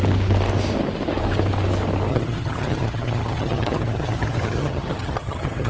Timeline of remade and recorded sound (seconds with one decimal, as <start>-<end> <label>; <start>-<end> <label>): 0.0-2.1 recorded; 2.1-5.7 remade